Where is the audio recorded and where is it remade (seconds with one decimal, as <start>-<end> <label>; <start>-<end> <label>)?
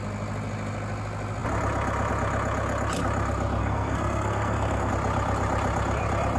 0.0-3.6 recorded; 3.6-4.9 remade; 4.9-6.4 recorded